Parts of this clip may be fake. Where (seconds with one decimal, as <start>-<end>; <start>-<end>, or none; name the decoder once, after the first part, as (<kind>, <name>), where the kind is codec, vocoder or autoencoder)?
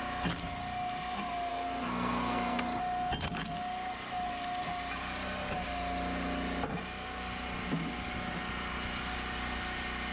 1.5-2.6 (codec, SNAC)